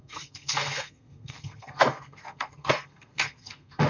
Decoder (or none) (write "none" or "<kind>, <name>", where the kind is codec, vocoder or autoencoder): codec, SNAC